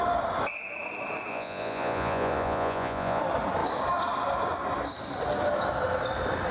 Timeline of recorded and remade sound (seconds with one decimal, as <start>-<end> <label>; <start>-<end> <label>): 0.0-1.3 recorded; 1.3-3.2 remade; 3.2-6.5 recorded